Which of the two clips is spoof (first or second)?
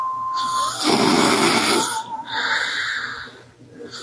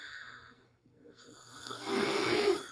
second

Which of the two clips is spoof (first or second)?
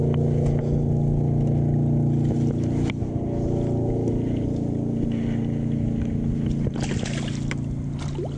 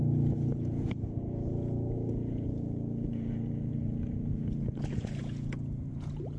second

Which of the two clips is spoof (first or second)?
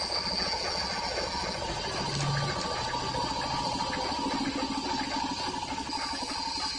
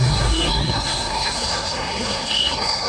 second